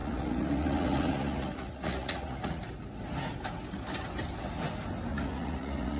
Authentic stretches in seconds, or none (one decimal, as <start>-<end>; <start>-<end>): 2.6-5.1